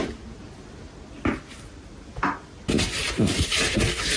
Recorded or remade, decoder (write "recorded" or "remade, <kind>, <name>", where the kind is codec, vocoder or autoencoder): recorded